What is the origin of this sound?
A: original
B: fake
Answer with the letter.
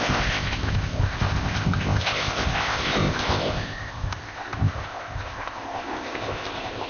B